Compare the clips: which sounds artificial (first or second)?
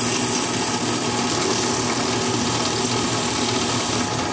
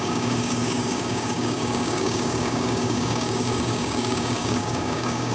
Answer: second